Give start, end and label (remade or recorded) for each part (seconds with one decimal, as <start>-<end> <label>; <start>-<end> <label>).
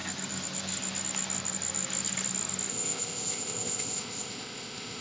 0.0-2.7 recorded; 2.7-5.0 remade